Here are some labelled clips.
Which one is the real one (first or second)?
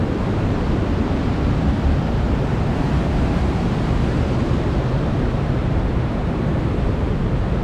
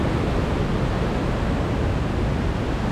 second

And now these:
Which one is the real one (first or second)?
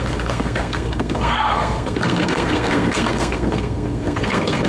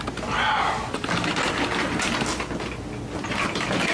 second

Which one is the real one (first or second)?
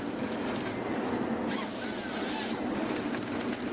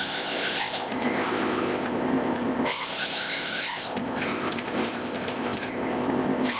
first